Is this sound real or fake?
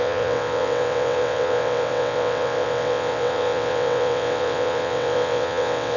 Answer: fake